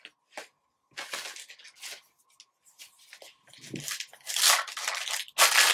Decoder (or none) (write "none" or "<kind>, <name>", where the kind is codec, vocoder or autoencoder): none